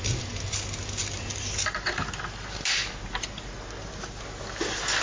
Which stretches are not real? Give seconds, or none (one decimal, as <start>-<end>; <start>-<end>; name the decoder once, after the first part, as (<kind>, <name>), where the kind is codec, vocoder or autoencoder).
none